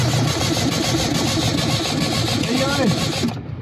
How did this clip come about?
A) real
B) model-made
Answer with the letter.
A